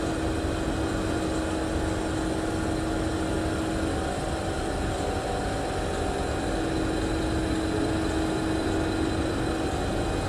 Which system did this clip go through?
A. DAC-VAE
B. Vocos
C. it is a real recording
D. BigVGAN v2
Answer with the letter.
C